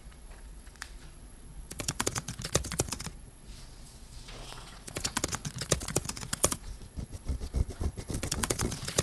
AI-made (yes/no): yes